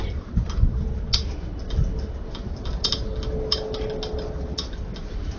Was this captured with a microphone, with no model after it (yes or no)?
yes